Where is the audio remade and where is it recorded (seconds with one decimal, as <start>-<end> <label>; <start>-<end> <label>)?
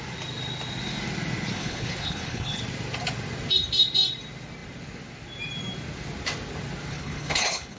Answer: 0.0-1.5 recorded; 1.5-2.6 remade; 2.6-6.9 recorded; 6.9-7.8 remade